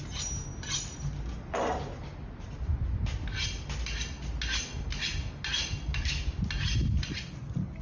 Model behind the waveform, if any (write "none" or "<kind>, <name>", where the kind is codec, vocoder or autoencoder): none